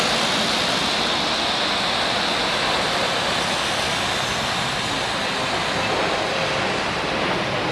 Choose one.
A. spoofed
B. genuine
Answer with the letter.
B